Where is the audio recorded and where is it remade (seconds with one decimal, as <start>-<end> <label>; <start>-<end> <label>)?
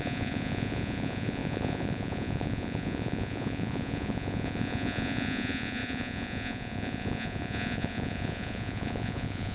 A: 0.0-9.5 remade